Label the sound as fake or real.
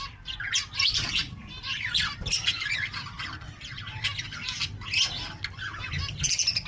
real